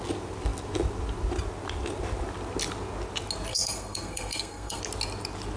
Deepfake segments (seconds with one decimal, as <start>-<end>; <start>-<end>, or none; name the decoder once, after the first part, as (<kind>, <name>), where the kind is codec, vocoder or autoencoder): 3.5-4.8 (codec, SNAC)